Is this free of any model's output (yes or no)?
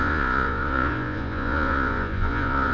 no